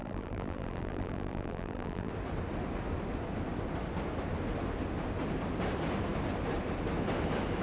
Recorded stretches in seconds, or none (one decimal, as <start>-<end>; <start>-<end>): 2.1-7.6